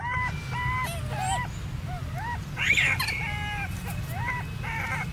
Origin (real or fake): real